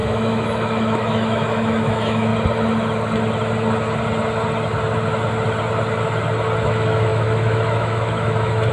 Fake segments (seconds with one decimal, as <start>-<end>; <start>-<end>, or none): 0.0-2.3; 6.6-8.7